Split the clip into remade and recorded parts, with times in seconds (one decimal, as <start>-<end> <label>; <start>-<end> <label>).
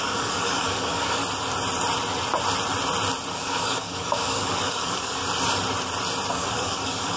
0.0-1.2 remade; 1.2-3.3 recorded; 3.3-5.2 remade; 5.2-6.3 recorded; 6.3-7.2 remade